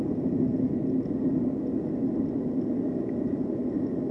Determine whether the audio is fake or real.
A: real